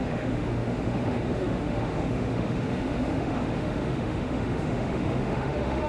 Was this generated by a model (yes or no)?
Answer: yes